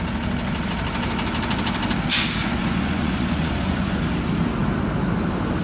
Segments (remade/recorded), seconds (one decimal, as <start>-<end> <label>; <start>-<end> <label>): 0.0-2.4 recorded; 2.4-4.0 remade; 4.0-5.6 recorded